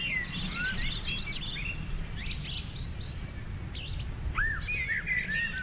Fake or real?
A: real